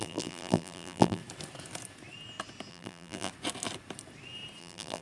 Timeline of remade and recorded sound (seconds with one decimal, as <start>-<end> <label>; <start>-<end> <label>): 0.0-1.2 remade; 1.2-2.7 recorded; 2.7-3.3 remade; 3.3-4.6 recorded; 4.6-5.0 remade